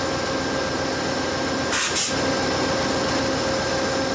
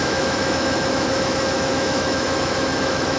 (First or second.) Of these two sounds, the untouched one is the first